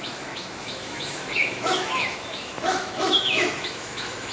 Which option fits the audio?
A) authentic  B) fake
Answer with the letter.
B